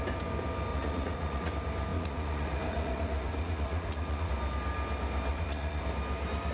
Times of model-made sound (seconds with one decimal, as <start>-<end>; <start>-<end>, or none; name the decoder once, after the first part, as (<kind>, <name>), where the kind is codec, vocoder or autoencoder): 0.7-1.5 (vocoder, Vocos); 1.9-4.3; 5.3-5.8